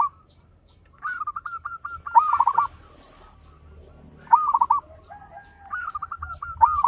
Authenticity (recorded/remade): recorded